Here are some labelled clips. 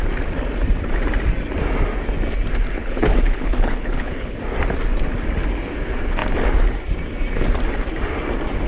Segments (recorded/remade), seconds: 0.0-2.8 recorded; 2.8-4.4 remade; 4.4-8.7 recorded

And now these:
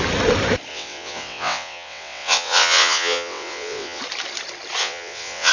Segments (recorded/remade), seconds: 0.0-0.7 recorded; 0.7-4.0 remade; 4.0-4.8 recorded; 4.8-5.5 remade

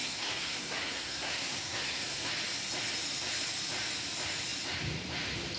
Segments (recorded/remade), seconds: 0.0-2.3 remade; 2.3-5.6 recorded

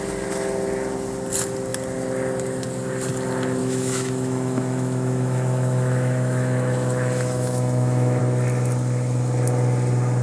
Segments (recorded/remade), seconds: 0.0-3.6 recorded; 3.6-8.2 remade; 8.2-10.2 recorded

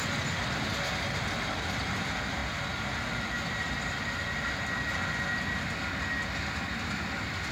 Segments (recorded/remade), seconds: 0.0-7.5 recorded

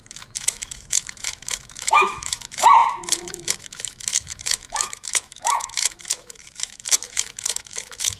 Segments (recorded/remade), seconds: 0.0-8.2 remade